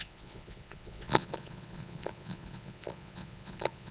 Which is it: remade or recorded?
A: remade